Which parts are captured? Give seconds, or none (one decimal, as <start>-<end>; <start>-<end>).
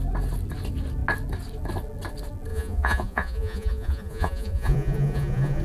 0.0-2.5